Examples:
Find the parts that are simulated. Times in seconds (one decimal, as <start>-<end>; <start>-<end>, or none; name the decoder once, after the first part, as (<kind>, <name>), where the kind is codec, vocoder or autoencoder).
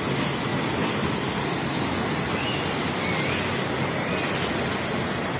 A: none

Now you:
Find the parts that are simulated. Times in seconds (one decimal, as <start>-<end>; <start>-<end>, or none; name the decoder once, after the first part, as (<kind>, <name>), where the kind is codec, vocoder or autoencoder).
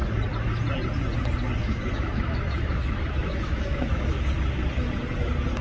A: 1.6-4.2 (autoencoder, DAC-VAE)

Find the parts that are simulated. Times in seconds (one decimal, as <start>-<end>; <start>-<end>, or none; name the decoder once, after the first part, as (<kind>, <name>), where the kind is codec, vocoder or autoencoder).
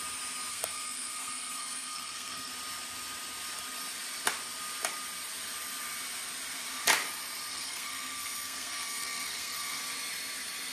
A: 0.5-2.5 (codec, SNAC); 7.5-9.8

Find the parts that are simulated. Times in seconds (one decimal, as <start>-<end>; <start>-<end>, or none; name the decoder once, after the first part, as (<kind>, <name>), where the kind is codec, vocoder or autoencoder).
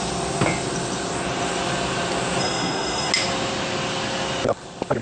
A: 2.4-3.1 (codec, SNAC)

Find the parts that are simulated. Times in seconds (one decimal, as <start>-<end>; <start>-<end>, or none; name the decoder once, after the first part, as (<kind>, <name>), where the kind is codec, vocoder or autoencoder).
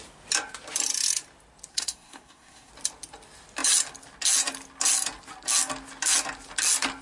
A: 1.7-2.7 (codec, SNAC)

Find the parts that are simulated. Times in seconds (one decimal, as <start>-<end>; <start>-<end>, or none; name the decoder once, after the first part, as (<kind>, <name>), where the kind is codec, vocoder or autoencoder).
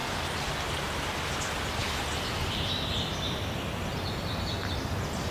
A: none